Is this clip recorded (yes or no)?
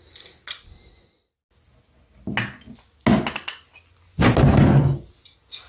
yes